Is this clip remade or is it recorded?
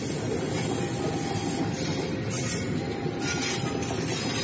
recorded